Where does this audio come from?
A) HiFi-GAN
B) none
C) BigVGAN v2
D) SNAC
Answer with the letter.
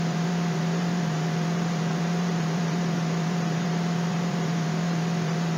C